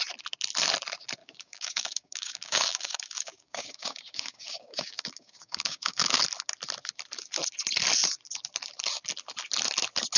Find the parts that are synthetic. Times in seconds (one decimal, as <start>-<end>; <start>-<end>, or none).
1.2-6.2